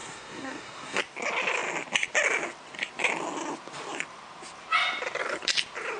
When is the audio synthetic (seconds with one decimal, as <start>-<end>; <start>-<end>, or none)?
0.0-1.0